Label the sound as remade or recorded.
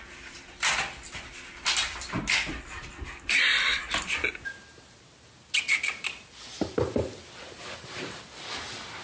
recorded